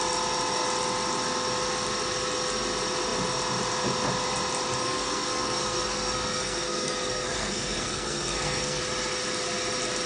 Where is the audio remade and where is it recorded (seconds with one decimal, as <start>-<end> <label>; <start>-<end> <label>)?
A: 0.0-4.8 recorded; 4.8-8.8 remade; 8.8-10.1 recorded